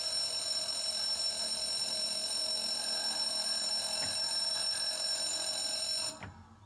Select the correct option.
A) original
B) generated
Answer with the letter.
A